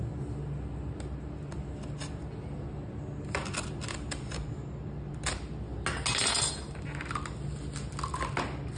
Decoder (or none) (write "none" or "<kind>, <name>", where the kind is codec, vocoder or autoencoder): none